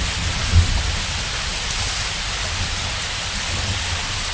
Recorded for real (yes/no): yes